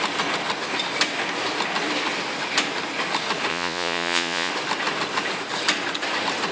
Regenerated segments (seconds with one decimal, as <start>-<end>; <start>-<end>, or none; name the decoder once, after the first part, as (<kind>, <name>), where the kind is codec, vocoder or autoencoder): 3.5-4.5 (vocoder, Vocos)